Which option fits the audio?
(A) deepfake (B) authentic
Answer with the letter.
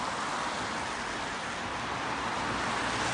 B